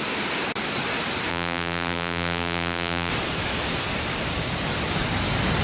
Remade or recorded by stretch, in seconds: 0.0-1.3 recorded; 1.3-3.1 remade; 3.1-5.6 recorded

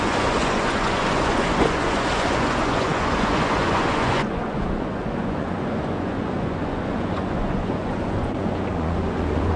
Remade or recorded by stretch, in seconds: 0.0-9.6 remade

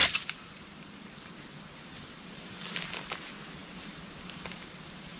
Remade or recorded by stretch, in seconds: 0.0-3.1 remade; 3.1-3.6 recorded; 3.6-5.2 remade

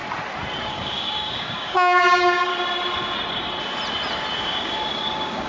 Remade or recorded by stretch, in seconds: 0.0-0.7 recorded; 0.7-2.5 remade; 2.5-4.4 recorded; 4.4-5.5 remade

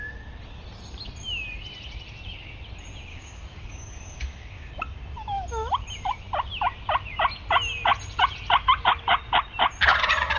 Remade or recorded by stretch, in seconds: 0.0-3.1 recorded; 3.1-4.7 remade; 4.7-10.4 recorded